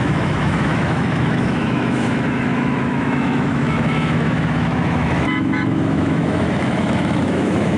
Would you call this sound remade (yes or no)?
yes